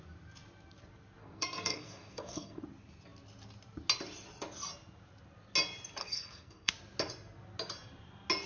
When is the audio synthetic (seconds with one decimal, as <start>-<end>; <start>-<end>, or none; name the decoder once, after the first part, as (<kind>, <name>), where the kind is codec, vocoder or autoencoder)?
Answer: 1.2-2.6 (codec, SNAC); 6.0-6.7